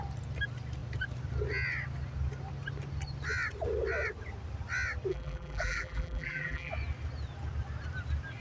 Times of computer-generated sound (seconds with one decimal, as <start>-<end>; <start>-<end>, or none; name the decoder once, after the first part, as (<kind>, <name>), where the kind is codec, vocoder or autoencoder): 5.1-6.7 (vocoder, BigVGAN v2)